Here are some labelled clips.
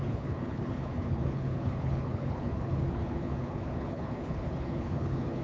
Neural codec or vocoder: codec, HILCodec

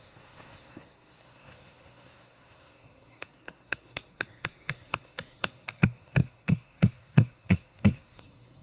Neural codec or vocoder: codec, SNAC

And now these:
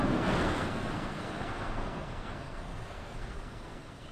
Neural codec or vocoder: codec, SNAC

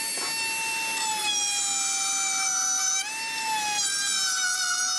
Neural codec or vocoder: none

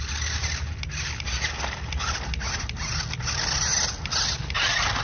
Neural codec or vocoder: none